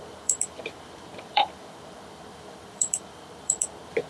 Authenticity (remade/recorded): remade